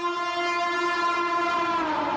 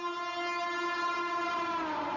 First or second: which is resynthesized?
first